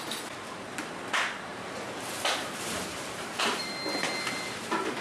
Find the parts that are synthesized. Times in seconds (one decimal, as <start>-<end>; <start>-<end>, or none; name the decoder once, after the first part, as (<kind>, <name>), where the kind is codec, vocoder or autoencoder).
1.5-3.7 (vocoder, BigVGAN v2)